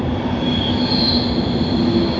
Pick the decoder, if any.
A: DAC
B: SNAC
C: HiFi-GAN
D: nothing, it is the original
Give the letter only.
D